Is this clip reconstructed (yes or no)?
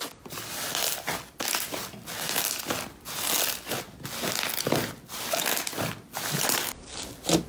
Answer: no